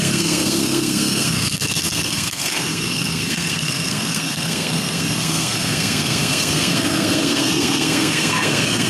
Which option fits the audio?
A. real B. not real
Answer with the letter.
B